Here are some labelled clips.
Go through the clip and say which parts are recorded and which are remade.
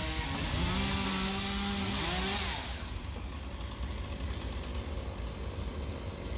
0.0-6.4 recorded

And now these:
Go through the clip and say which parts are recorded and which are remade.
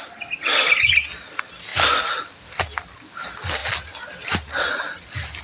0.0-5.4 recorded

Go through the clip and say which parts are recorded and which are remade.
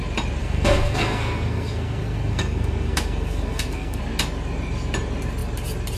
0.0-0.4 recorded; 0.4-4.0 remade; 4.0-6.0 recorded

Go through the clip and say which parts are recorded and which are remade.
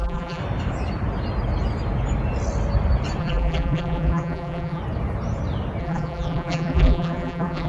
0.0-0.4 remade; 0.4-3.2 recorded; 3.2-4.8 remade; 4.8-5.8 recorded; 5.8-7.7 remade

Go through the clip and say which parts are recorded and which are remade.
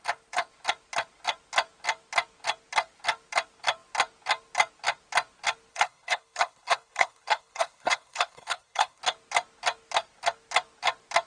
0.0-5.7 recorded; 5.7-9.0 remade; 9.0-11.3 recorded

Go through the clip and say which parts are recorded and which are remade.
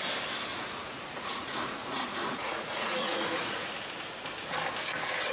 0.0-0.5 recorded; 0.5-3.7 remade; 3.7-5.3 recorded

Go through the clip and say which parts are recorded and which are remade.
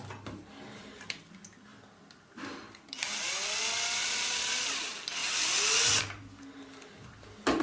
0.0-7.6 recorded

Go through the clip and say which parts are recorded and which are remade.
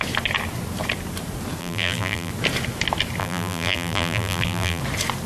0.0-1.6 recorded; 1.6-2.3 remade; 2.3-3.2 recorded; 3.2-4.8 remade; 4.8-5.3 recorded